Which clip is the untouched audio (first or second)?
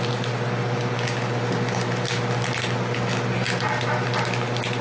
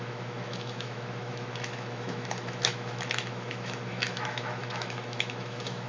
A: first